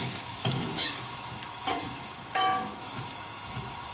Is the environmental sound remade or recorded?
remade